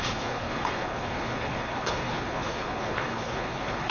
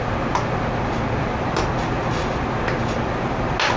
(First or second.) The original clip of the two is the second